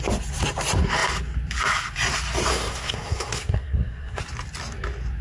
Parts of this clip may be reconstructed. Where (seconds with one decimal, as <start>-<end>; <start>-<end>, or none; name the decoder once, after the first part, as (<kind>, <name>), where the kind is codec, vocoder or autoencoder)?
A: 2.5-4.2 (codec, SNAC)